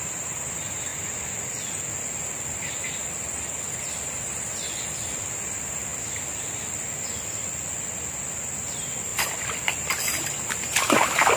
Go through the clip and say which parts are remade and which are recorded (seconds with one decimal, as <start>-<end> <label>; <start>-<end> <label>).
0.0-11.4 recorded